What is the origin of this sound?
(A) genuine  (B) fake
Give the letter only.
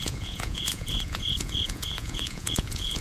B